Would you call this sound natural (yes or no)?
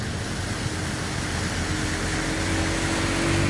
yes